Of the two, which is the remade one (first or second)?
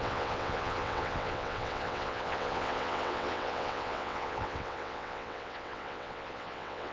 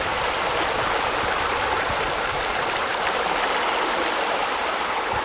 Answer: first